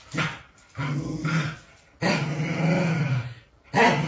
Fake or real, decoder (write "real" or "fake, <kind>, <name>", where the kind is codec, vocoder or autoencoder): real